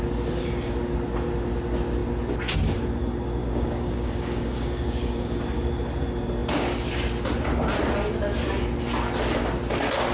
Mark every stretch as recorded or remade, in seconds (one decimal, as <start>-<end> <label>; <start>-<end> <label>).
0.0-3.4 recorded; 3.4-5.4 remade; 5.4-10.1 recorded

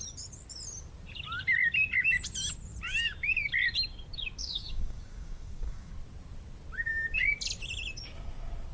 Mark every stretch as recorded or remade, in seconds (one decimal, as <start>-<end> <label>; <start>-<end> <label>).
0.0-4.4 recorded; 4.4-5.9 remade; 5.9-8.7 recorded

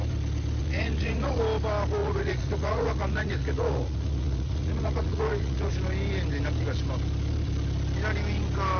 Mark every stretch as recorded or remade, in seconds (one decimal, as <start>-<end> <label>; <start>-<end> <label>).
0.0-0.6 recorded; 0.6-1.4 remade; 1.4-2.0 recorded; 2.0-5.7 remade; 5.7-8.8 recorded